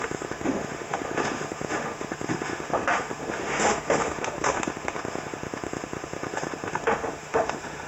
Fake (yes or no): yes